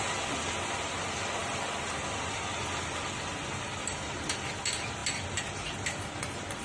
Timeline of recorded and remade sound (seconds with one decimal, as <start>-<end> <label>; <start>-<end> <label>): 0.0-6.6 recorded